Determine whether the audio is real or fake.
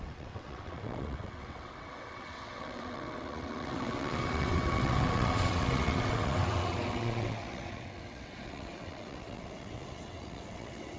fake